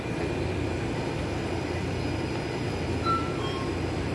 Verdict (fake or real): fake